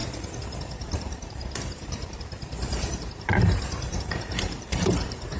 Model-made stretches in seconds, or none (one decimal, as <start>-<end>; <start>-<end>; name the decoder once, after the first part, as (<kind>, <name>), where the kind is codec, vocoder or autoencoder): 0.6-2.0 (vocoder, BigVGAN v2); 2.9-5.4